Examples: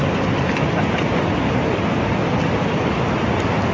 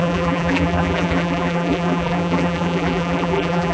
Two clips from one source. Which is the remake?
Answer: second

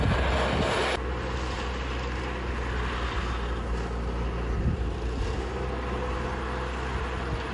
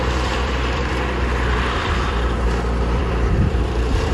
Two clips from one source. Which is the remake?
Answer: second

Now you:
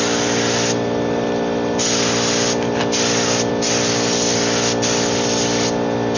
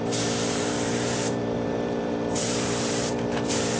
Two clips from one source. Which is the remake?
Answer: second